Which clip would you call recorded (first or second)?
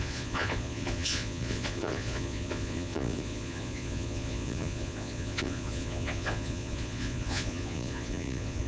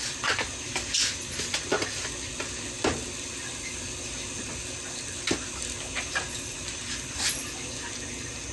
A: second